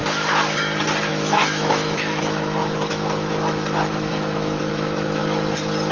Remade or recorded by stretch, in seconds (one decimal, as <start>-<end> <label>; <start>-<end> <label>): 0.0-1.1 recorded; 1.1-5.2 remade; 5.2-5.9 recorded